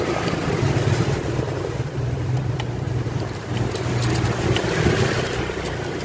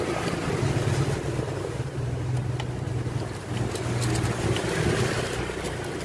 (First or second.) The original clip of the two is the second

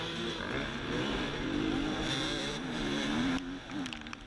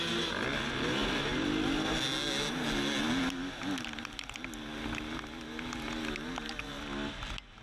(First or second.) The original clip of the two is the second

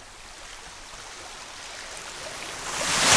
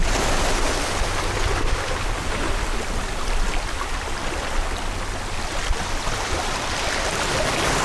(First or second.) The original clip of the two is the first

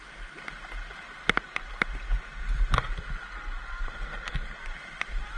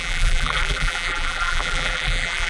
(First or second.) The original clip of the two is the first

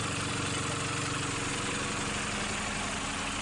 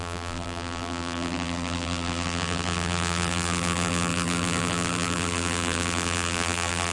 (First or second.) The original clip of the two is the first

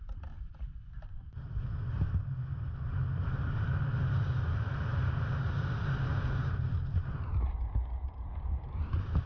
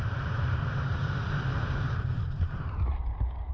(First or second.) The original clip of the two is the first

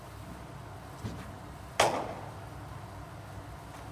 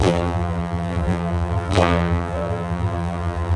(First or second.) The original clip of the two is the first